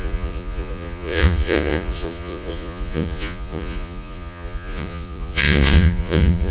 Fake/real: fake